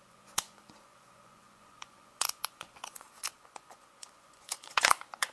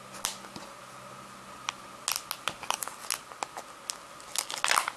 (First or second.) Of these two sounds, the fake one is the first